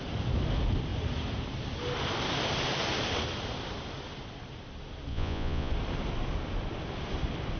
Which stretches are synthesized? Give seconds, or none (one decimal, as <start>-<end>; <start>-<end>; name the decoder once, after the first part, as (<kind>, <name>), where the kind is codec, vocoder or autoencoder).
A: 5.1-5.7 (vocoder, Vocos)